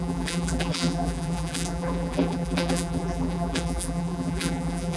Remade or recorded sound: remade